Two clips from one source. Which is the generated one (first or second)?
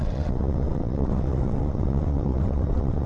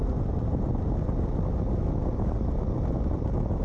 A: first